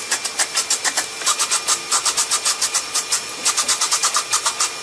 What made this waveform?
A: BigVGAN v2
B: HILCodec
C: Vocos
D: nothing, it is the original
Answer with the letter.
A